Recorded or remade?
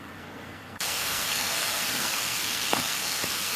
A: remade